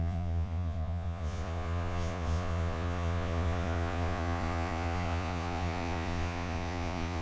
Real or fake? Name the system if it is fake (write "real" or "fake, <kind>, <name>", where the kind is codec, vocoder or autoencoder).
fake, vocoder, Vocos